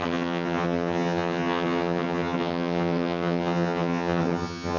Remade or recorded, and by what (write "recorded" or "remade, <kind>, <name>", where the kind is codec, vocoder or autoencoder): remade, vocoder, HiFi-GAN